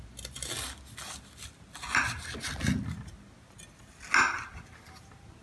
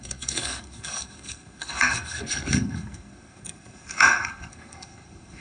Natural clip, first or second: first